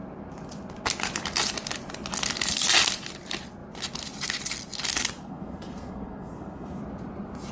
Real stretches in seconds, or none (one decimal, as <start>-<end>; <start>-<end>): 0.0-5.2; 6.8-7.5